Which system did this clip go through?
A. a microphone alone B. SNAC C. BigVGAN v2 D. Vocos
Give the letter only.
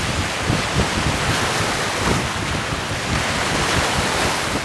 A